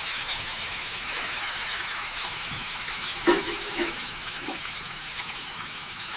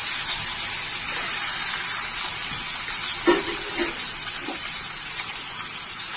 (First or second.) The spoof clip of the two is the first